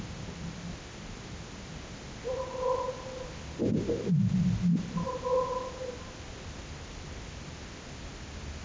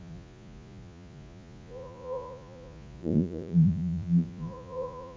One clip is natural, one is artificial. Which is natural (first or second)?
first